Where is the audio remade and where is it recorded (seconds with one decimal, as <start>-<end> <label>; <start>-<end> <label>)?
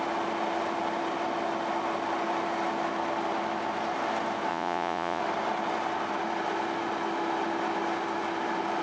0.0-4.5 recorded; 4.5-5.2 remade; 5.2-8.8 recorded